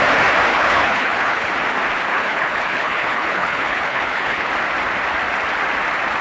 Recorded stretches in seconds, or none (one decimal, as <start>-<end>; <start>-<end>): 0.0-0.5; 1.5-2.1; 4.5-6.2

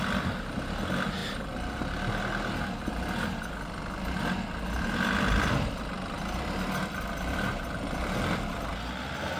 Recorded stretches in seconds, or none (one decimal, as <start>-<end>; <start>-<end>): 0.0-9.4